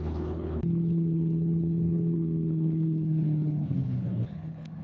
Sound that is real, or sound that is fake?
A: fake